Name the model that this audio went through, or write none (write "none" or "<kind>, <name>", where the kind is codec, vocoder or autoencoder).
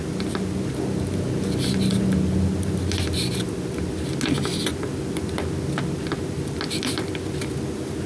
none